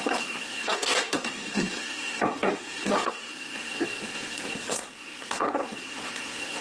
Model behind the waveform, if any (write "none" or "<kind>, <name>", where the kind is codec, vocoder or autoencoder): codec, SNAC